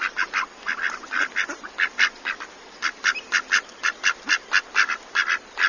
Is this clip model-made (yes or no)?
no